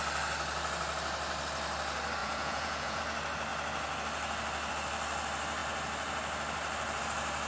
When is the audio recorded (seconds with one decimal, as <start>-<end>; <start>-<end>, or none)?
0.0-2.2; 3.0-7.5